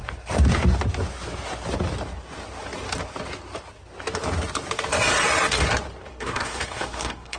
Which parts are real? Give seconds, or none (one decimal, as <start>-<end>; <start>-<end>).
0.0-6.1